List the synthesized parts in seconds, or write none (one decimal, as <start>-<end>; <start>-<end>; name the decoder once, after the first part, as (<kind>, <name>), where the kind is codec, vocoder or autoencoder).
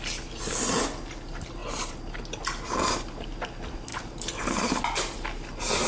1.6-2.2 (vocoder, BigVGAN v2); 3.9-4.7